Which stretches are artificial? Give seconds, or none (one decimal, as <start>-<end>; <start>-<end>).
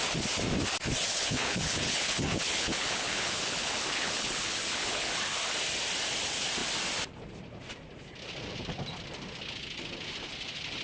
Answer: 1.1-5.1